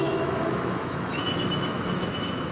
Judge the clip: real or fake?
fake